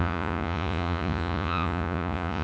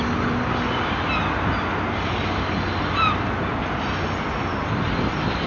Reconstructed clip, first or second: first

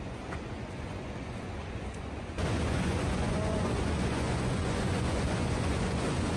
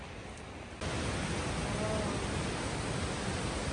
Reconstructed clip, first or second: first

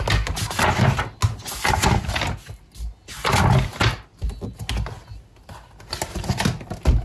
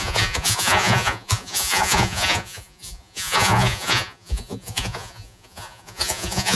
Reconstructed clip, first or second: second